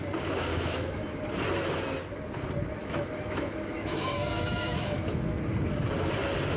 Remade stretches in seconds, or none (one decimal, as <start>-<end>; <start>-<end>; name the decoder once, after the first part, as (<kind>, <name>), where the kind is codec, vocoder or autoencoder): 0.5-1.2 (autoencoder, DAC-VAE); 2.8-5.4